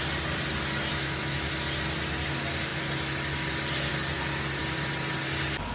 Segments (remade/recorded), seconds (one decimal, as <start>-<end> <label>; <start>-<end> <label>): 0.0-0.9 recorded; 0.9-1.5 remade; 1.5-5.7 recorded